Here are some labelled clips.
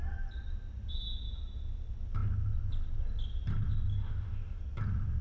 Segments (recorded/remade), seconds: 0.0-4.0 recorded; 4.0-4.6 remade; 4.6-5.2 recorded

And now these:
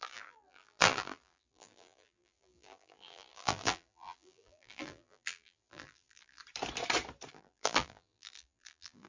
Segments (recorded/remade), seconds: 0.0-6.4 remade; 6.4-7.3 recorded; 7.3-9.1 remade

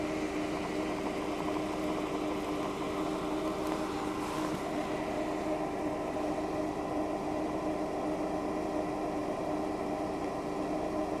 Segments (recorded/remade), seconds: 0.0-11.2 recorded

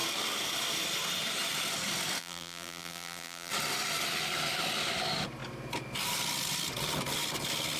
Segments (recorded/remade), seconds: 0.0-2.2 recorded; 2.2-3.5 remade; 3.5-7.8 recorded

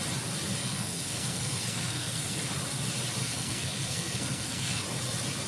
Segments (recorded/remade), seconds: 0.0-0.6 recorded; 0.6-2.5 remade; 2.5-3.2 recorded; 3.2-4.8 remade; 4.8-5.5 recorded

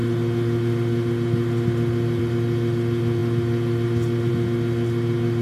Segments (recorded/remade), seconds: 0.0-5.4 recorded

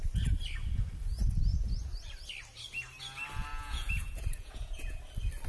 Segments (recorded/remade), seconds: 0.0-3.5 recorded; 3.5-5.0 remade; 5.0-5.5 recorded

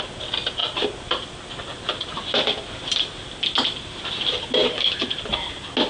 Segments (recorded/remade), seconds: 0.0-4.6 recorded; 4.6-5.2 remade; 5.2-5.9 recorded